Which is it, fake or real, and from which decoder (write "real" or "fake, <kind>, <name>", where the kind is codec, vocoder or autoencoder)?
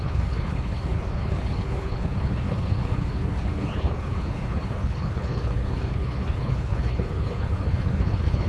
fake, codec, HILCodec